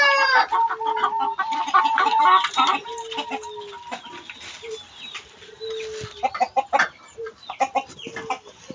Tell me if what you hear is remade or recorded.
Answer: recorded